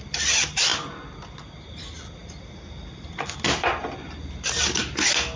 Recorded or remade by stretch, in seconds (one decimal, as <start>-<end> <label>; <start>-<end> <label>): 0.0-5.4 recorded